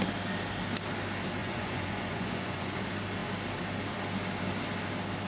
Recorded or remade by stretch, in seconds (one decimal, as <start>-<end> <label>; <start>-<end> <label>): 0.0-1.4 recorded; 1.4-2.8 remade; 2.8-5.3 recorded